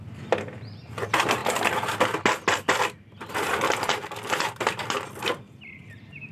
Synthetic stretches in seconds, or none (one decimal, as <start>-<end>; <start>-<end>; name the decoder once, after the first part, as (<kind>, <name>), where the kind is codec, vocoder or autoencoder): none